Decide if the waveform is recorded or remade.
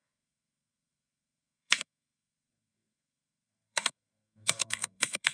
remade